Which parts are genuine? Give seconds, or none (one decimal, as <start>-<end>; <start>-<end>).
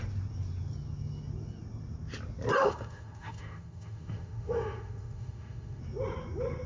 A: 0.0-2.6; 5.8-6.7